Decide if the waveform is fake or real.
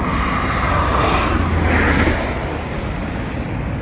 real